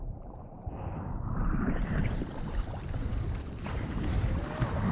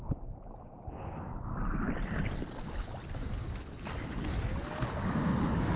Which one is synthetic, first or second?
first